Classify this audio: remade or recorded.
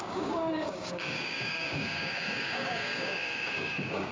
remade